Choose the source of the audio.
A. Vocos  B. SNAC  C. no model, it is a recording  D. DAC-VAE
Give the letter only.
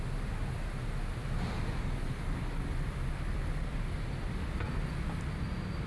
C